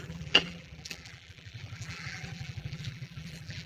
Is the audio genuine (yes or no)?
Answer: no